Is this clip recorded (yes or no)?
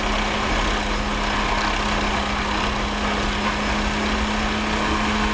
yes